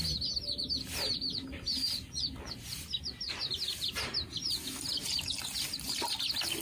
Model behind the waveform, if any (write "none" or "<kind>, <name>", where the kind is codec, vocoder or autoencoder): none